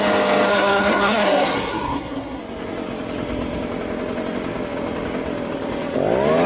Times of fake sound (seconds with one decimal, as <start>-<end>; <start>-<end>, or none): 0.5-2.4